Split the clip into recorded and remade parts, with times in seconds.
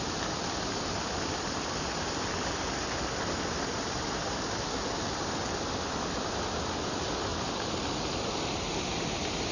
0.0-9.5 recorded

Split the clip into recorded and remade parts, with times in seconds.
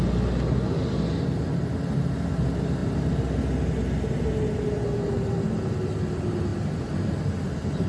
0.0-7.9 recorded